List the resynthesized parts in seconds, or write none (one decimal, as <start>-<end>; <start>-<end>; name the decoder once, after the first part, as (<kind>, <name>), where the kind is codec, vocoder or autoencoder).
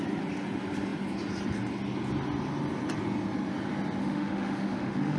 4.0-5.2 (autoencoder, DAC-VAE)